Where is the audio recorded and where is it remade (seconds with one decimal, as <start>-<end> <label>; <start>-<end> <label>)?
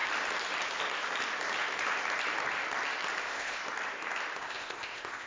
0.0-3.2 recorded; 3.2-3.6 remade; 3.6-4.4 recorded; 4.4-5.3 remade